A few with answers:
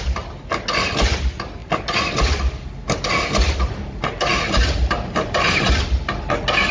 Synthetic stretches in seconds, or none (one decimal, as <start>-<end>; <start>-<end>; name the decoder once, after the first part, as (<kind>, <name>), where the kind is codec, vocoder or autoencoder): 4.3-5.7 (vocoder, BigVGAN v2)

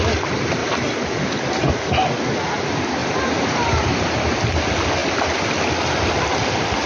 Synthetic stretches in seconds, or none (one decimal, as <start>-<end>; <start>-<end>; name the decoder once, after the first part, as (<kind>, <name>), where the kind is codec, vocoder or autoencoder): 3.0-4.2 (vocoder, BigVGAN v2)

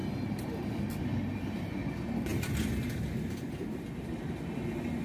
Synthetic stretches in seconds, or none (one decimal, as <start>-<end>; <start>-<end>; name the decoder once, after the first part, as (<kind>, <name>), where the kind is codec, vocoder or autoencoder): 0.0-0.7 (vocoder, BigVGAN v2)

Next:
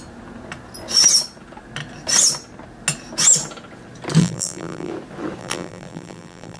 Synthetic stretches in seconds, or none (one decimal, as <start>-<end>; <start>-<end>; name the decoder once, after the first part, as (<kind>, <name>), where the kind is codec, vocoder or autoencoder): 4.2-4.9 (vocoder, BigVGAN v2); 5.4-6.6